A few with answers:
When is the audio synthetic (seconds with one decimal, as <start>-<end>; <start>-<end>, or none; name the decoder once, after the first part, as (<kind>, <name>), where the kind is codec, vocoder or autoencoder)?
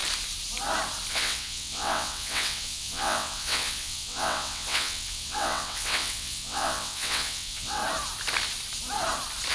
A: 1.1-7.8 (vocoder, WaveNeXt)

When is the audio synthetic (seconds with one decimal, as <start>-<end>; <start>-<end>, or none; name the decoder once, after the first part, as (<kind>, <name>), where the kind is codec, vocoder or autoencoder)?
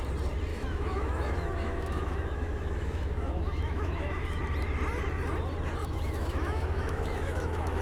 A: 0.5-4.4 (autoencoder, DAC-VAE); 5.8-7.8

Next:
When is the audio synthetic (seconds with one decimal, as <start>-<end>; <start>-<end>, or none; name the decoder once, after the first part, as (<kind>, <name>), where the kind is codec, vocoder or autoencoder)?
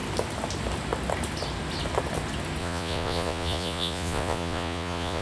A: 2.6-5.2 (vocoder, Vocos)